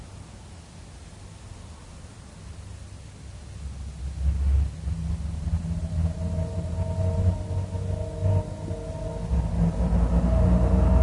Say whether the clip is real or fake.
real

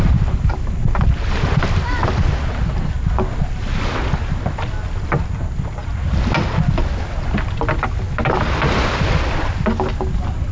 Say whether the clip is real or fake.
real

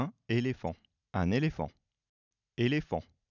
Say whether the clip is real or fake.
real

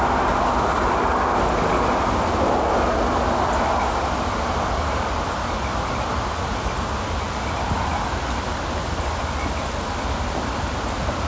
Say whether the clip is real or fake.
real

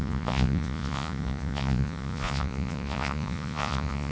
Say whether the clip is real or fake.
fake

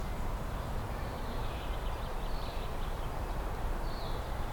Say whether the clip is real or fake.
fake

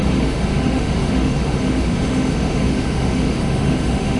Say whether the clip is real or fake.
fake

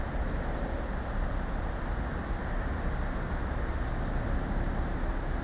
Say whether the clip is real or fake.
real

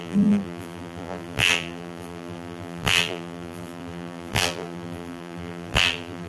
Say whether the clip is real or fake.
fake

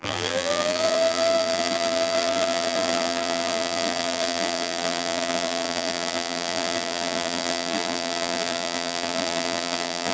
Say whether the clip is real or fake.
fake